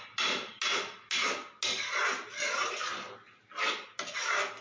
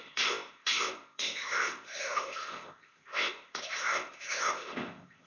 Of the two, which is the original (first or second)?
first